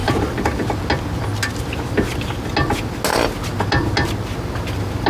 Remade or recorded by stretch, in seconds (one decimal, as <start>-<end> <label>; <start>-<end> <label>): 0.0-5.1 recorded